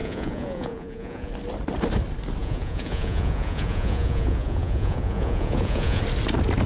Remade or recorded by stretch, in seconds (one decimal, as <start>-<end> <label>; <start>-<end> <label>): 0.0-1.3 remade; 1.3-2.4 recorded; 2.4-6.0 remade; 6.0-6.7 recorded